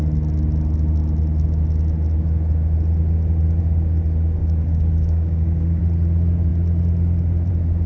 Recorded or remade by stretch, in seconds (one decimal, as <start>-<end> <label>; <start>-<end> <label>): 0.0-4.4 recorded; 4.4-5.8 remade; 5.8-7.9 recorded